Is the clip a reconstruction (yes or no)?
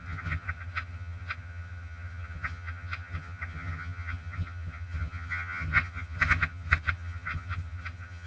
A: yes